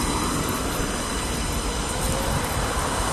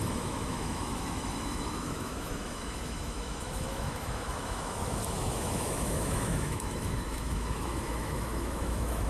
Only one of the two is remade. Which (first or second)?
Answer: second